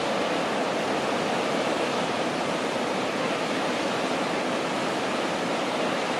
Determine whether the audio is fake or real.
real